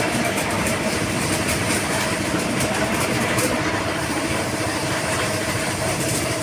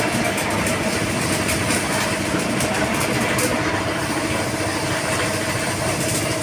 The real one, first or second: second